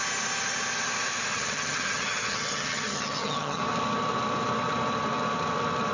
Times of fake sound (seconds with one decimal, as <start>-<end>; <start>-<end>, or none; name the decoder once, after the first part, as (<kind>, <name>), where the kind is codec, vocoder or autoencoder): 1.3-3.6 (vocoder, HiFi-GAN)